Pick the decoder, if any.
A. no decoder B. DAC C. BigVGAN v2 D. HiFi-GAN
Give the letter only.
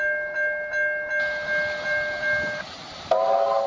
A